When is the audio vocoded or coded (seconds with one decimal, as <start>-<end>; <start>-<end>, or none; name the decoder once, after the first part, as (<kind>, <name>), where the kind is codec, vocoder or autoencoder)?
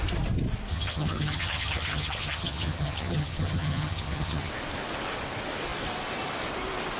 0.7-4.5 (vocoder, HiFi-GAN)